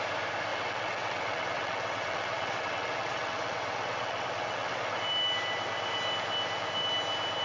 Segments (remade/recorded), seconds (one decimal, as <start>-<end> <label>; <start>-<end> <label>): 0.0-0.5 recorded; 0.5-4.9 remade; 4.9-7.4 recorded